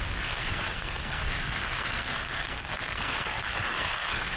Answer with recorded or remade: remade